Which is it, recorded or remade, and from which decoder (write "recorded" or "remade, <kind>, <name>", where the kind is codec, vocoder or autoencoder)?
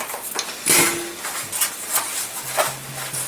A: recorded